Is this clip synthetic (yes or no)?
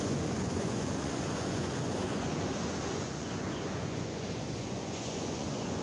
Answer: yes